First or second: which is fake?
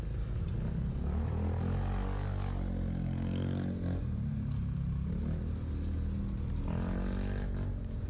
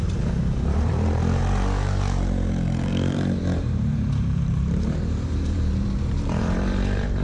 second